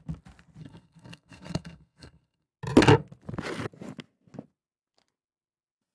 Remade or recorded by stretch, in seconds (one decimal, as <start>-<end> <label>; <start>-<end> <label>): 0.0-0.6 recorded; 0.6-2.5 remade; 2.5-5.9 recorded